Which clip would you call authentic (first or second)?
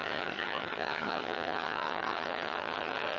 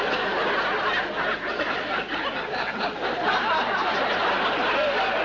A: second